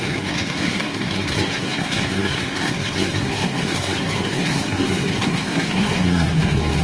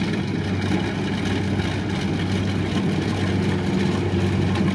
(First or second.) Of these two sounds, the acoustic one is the second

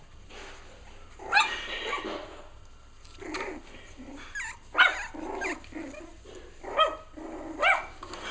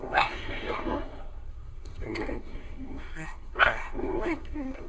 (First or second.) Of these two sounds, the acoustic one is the first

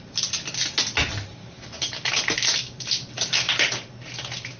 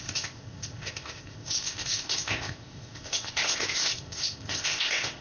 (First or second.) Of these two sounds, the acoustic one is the first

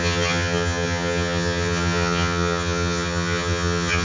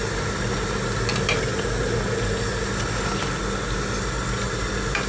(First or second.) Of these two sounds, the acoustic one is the second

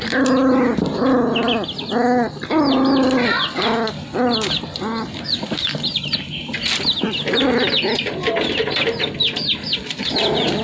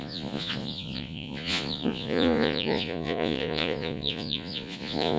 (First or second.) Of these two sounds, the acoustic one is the first